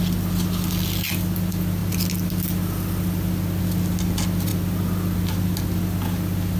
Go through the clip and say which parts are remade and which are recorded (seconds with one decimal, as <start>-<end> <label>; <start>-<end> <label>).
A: 0.0-6.6 recorded